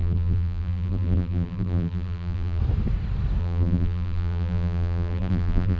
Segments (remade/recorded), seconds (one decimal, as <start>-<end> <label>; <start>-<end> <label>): 0.0-2.6 remade; 2.6-3.4 recorded; 3.4-5.8 remade

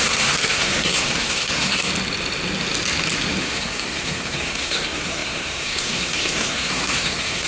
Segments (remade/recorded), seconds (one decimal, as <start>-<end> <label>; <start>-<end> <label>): 0.0-1.9 remade; 1.9-3.4 recorded; 3.4-7.5 remade

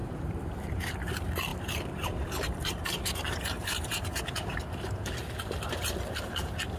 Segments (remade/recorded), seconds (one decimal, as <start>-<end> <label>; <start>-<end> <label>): 0.0-0.9 remade; 0.9-1.5 recorded; 1.5-5.1 remade; 5.1-6.8 recorded

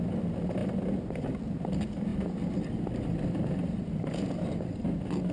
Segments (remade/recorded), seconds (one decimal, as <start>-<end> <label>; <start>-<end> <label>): 0.0-5.3 recorded